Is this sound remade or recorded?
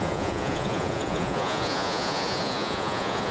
remade